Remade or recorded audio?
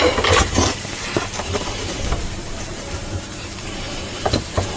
remade